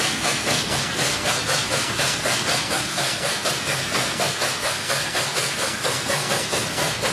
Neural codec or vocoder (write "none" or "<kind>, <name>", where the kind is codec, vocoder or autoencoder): codec, SNAC